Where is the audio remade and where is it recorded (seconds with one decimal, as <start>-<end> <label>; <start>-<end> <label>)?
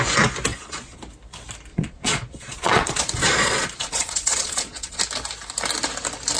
0.0-0.5 recorded; 0.5-1.0 remade; 1.0-1.7 recorded; 1.7-5.0 remade; 5.0-6.4 recorded